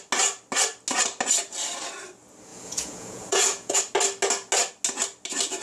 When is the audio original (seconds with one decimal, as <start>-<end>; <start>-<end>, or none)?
0.0-2.5; 3.8-5.6